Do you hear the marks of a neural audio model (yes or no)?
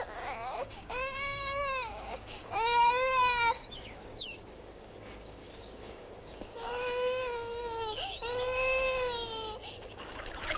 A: yes